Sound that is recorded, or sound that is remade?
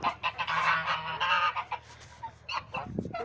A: recorded